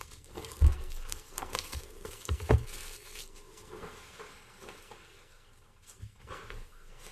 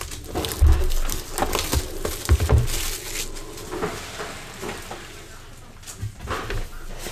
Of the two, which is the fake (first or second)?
first